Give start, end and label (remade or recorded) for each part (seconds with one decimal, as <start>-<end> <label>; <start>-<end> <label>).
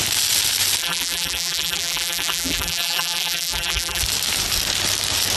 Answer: 0.0-0.8 recorded; 0.8-4.0 remade; 4.0-5.4 recorded